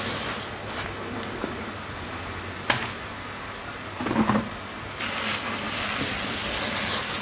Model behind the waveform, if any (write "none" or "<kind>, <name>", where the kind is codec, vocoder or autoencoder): none